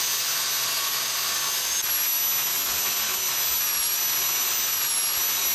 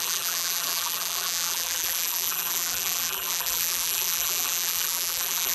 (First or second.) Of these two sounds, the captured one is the first